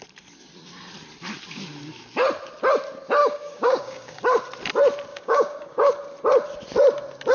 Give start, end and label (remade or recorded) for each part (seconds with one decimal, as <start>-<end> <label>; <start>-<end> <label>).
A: 0.0-3.2 recorded; 3.2-4.2 remade; 4.2-5.1 recorded; 5.1-5.9 remade; 5.9-7.3 recorded